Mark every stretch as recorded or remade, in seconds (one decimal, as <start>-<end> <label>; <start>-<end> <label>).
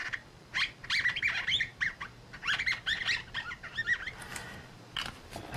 0.0-4.3 remade; 4.3-5.6 recorded